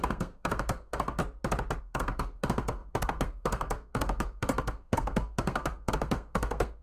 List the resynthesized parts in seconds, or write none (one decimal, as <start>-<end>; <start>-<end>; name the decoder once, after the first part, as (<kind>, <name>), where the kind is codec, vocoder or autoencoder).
0.0-1.2 (codec, SNAC); 1.8-6.8